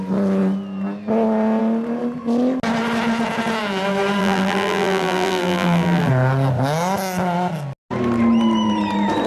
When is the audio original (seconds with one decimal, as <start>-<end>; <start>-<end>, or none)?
0.0-4.2; 6.1-9.3